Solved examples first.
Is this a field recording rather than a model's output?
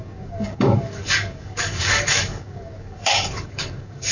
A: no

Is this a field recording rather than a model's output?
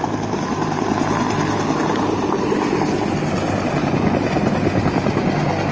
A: yes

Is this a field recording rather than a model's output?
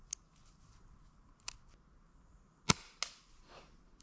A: yes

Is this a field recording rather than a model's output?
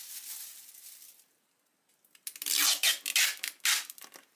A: yes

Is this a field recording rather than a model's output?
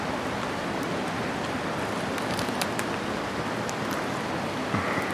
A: yes